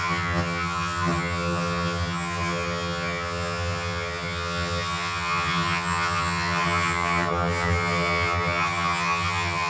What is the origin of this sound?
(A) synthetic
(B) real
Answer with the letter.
A